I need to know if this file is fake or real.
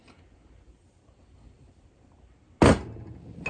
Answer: real